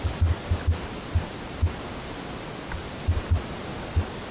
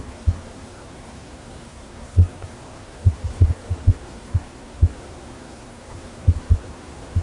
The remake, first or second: second